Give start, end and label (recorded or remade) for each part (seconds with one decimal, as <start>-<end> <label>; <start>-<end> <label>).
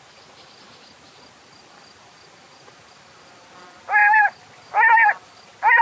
0.0-5.8 recorded